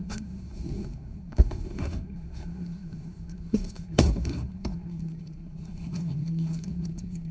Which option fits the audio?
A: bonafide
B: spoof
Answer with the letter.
B